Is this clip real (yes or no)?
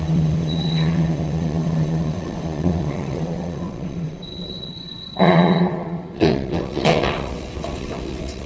no